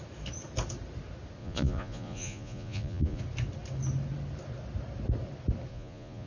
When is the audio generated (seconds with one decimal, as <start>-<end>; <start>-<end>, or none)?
1.4-3.2; 5.7-6.3

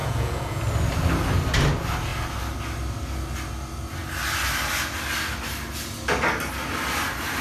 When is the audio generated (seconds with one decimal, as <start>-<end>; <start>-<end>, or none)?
0.0-0.6

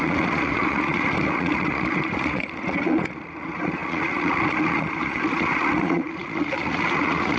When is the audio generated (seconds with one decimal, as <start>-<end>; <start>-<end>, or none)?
0.0-7.4

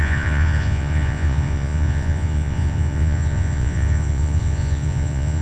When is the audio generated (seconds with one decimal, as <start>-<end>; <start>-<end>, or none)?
0.0-5.4

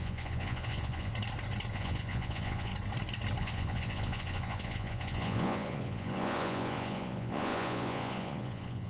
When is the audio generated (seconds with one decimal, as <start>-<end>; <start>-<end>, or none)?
0.0-1.1; 1.7-2.7; 3.4-8.9